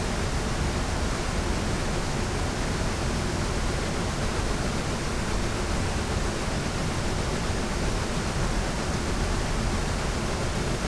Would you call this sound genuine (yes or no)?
yes